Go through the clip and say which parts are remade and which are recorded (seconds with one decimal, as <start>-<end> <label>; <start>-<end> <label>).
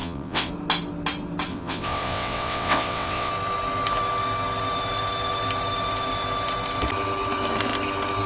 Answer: 0.0-0.5 remade; 0.5-1.5 recorded; 1.5-3.3 remade; 3.3-8.3 recorded